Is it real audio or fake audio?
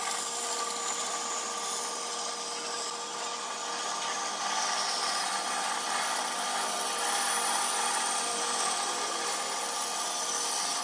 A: real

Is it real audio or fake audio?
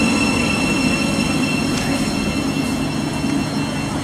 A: real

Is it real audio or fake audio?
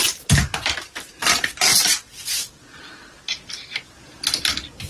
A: real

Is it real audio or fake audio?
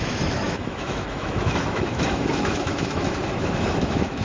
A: fake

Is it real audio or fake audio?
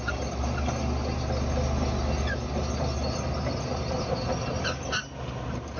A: real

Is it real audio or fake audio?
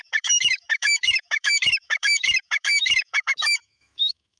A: fake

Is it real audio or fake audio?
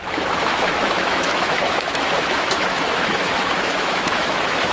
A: fake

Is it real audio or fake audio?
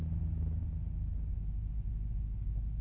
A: real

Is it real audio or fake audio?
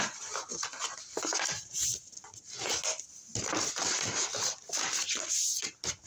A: real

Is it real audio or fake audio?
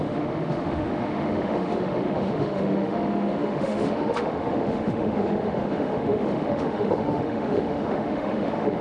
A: fake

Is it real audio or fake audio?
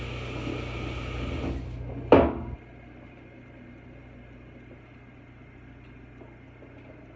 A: real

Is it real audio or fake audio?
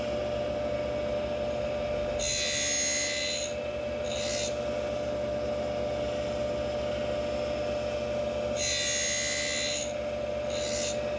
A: real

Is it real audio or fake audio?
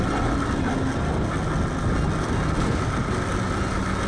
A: real